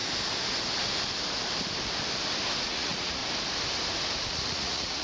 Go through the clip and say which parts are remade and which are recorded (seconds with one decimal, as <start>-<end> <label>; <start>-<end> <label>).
0.0-2.6 recorded; 2.6-3.2 remade; 3.2-4.3 recorded; 4.3-5.0 remade